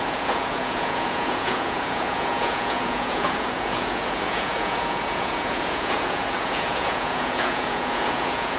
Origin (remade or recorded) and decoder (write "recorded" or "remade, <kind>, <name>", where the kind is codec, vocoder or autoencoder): remade, vocoder, Vocos